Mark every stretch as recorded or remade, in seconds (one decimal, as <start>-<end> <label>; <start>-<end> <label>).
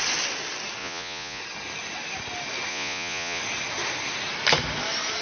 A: 0.0-0.8 recorded; 0.8-1.4 remade; 1.4-2.7 recorded; 2.7-3.4 remade; 3.4-5.2 recorded